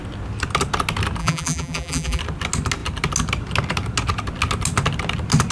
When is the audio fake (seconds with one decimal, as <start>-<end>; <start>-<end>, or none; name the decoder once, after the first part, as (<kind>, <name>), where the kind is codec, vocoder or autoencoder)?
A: 1.2-2.2 (vocoder, BigVGAN v2)